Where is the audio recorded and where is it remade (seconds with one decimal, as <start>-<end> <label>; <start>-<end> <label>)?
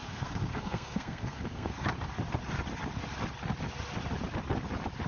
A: 0.0-1.9 remade; 1.9-5.1 recorded